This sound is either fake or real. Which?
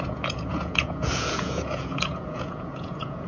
fake